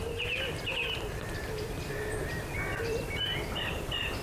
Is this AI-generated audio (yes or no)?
yes